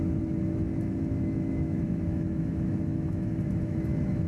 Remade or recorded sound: remade